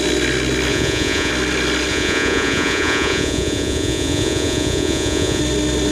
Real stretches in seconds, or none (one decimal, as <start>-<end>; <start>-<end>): 0.0-0.7; 1.3-1.9; 5.4-5.9